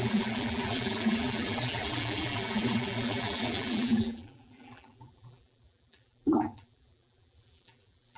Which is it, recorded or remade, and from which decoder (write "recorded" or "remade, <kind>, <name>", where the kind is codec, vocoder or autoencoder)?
remade, vocoder, BigVGAN v2